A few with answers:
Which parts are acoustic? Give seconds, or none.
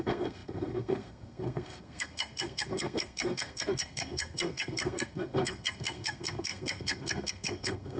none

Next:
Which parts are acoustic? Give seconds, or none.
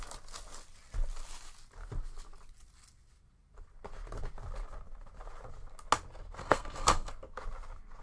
0.0-6.4; 7.1-8.0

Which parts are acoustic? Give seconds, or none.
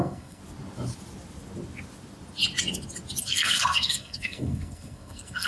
0.4-3.2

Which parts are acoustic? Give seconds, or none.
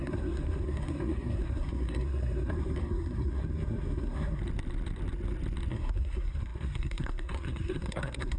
4.4-5.7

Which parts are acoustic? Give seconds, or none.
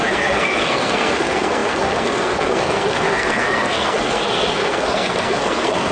none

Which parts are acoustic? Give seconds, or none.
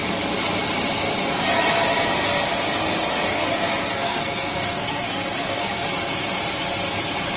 0.0-3.8; 5.9-7.4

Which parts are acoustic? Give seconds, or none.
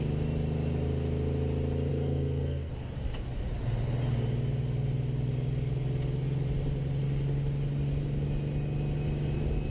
0.0-1.9; 2.7-9.7